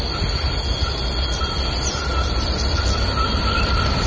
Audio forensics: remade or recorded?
recorded